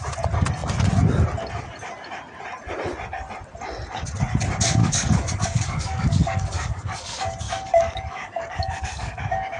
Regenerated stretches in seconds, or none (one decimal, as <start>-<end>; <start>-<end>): 4.8-9.6